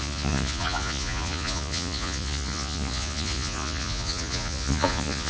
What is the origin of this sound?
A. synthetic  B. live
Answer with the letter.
A